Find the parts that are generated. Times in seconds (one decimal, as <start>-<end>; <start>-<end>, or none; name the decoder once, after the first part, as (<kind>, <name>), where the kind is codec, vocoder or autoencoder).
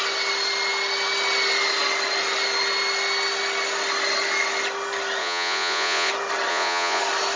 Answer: 5.2-6.1 (vocoder, Vocos); 6.5-7.0